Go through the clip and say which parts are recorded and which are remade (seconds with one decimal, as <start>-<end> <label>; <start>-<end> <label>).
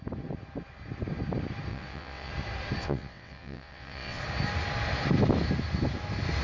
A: 0.0-1.7 recorded; 1.7-2.3 remade; 2.3-2.8 recorded; 2.8-4.2 remade; 4.2-6.4 recorded